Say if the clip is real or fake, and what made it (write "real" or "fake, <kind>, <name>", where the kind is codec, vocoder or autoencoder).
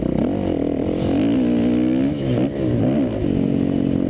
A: real